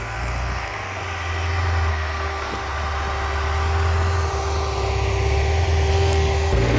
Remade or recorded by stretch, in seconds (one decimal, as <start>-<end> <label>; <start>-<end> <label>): 0.0-1.0 remade; 1.0-1.9 recorded; 1.9-2.6 remade; 2.6-5.9 recorded; 5.9-6.8 remade